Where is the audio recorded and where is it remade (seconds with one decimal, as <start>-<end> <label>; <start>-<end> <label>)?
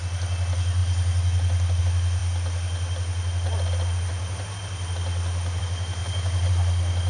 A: 0.0-7.1 recorded